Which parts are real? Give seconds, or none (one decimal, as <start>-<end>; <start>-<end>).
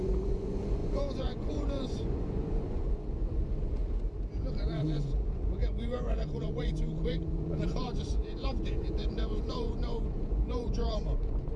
3.8-4.5